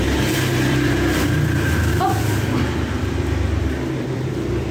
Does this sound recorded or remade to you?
remade